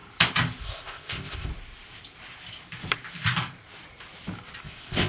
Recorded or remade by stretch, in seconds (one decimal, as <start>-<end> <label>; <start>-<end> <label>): 0.0-0.6 recorded; 0.6-1.5 remade; 1.5-4.6 recorded; 4.6-5.1 remade